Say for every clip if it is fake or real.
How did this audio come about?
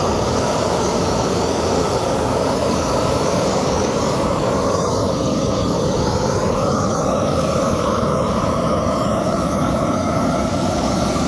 fake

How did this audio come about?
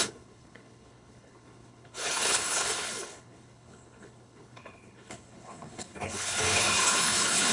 fake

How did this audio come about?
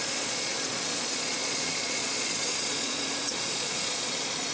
fake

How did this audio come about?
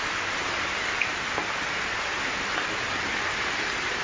real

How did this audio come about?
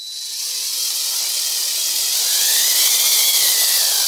real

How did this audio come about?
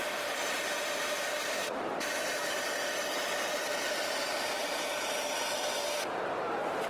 real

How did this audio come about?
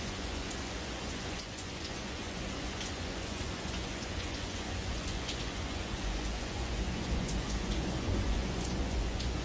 fake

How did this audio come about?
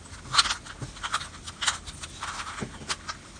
real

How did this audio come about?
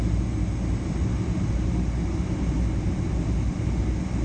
real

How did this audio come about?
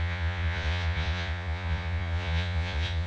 fake